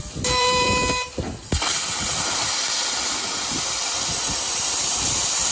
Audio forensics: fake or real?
fake